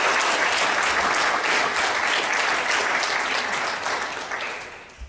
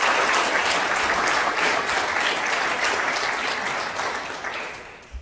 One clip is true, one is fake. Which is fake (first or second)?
second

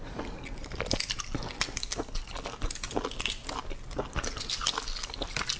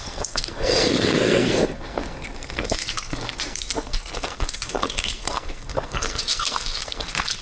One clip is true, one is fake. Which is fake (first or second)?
second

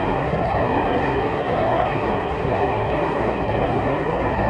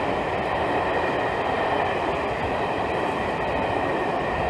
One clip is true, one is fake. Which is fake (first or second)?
first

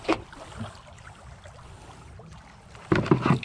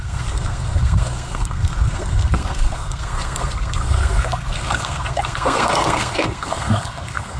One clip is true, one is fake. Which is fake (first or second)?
second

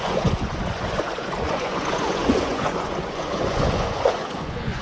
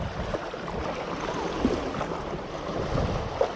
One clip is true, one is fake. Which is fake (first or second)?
first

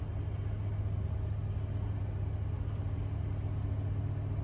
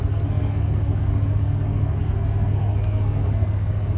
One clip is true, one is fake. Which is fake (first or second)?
second